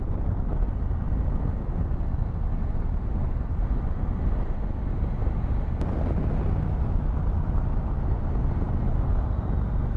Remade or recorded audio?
recorded